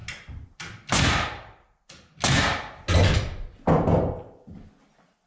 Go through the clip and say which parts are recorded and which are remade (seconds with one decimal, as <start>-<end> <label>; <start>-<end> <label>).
0.0-5.3 recorded